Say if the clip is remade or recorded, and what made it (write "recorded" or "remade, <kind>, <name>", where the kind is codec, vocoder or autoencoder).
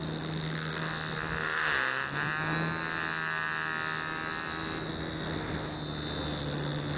recorded